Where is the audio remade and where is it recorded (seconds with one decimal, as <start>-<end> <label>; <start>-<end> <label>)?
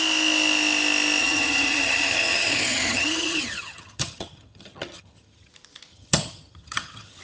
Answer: 0.0-1.2 recorded; 1.2-5.5 remade; 5.5-5.9 recorded; 5.9-7.2 remade